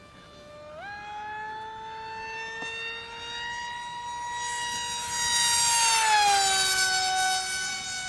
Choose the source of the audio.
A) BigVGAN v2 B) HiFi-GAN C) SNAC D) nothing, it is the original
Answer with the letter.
D